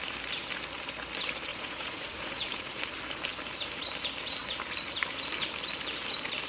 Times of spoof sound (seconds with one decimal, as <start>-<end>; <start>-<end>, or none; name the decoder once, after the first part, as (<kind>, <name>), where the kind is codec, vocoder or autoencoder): 1.5-2.8 (vocoder, Vocos)